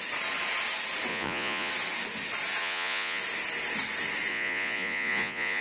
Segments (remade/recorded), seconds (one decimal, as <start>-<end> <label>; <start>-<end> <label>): 0.0-1.1 recorded; 1.1-1.7 remade; 1.7-2.6 recorded; 2.6-3.2 remade; 3.2-4.3 recorded; 4.3-5.6 remade